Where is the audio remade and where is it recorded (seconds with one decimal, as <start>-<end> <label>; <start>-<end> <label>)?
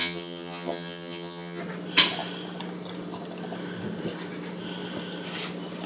0.0-1.6 remade; 1.6-5.9 recorded